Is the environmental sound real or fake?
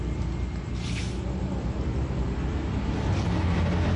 real